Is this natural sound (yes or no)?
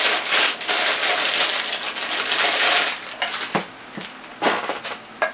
yes